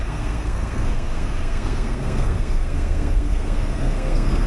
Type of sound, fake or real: fake